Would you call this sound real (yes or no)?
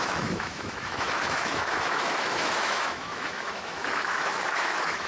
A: no